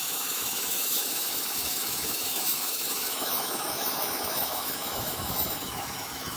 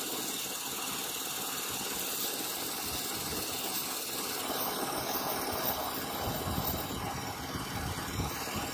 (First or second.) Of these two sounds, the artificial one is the first